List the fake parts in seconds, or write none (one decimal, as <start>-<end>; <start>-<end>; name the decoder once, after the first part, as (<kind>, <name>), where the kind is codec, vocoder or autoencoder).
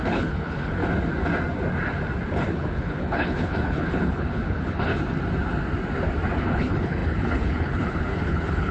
0.0-0.8 (codec, HILCodec); 2.4-4.9; 6.4-8.7